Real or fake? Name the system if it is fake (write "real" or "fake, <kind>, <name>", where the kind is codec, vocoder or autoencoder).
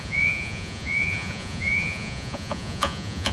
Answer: fake, vocoder, Vocos